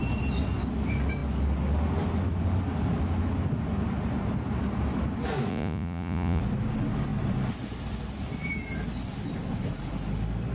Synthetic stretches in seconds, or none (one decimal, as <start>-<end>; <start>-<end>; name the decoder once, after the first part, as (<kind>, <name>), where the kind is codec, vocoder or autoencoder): 5.5-6.4 (vocoder, Vocos)